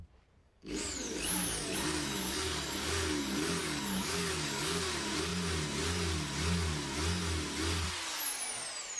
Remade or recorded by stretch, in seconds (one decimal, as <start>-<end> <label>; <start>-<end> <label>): 0.0-0.4 recorded; 0.4-4.8 remade; 4.8-9.0 recorded